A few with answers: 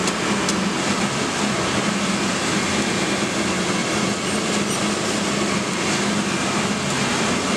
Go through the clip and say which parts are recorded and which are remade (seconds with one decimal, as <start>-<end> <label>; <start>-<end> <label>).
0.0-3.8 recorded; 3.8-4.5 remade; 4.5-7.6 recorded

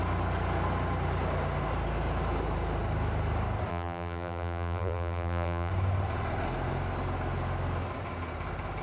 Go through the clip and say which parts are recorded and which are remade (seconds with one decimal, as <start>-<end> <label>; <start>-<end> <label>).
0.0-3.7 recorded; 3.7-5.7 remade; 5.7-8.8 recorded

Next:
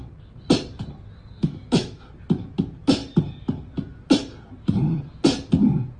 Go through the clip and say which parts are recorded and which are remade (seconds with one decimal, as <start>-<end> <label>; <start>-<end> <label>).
0.0-1.4 recorded; 1.4-2.1 remade; 2.1-6.0 recorded